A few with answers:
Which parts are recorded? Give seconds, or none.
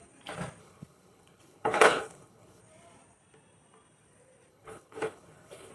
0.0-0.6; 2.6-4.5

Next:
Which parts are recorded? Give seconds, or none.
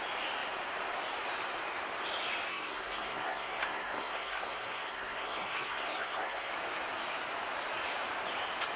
0.0-2.5; 6.5-8.8